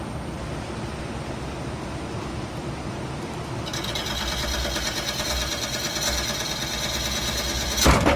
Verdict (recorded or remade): remade